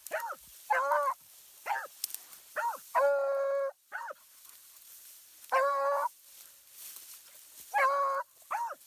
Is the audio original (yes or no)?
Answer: yes